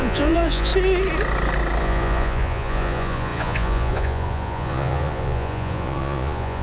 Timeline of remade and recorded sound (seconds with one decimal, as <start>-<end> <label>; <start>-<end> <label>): 0.0-0.7 remade; 0.7-1.8 recorded; 1.8-6.6 remade